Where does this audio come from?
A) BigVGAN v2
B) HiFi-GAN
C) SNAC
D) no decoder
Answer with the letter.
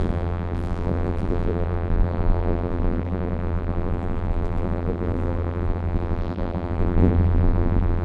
A